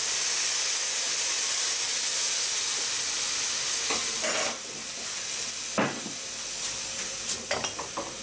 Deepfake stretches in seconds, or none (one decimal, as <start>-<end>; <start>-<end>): none